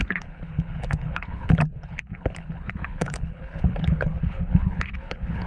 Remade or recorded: remade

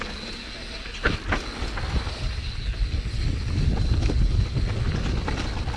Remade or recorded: recorded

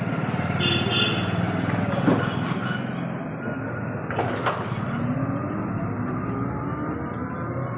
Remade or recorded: recorded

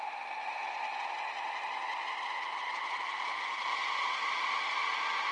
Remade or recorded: recorded